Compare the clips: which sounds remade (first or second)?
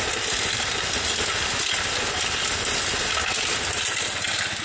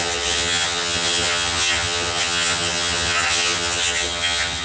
second